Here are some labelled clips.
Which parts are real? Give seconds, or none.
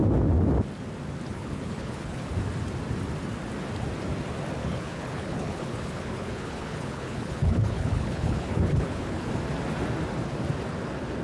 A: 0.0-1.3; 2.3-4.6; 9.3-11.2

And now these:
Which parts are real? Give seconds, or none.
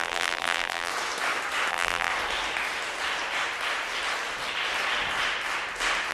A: 0.9-1.7; 2.1-6.1